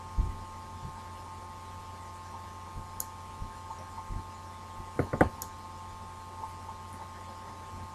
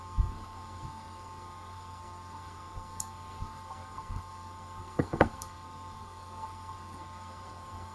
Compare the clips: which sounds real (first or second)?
first